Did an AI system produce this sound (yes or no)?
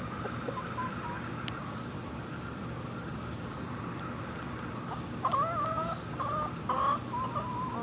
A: no